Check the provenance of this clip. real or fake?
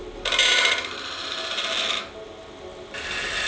real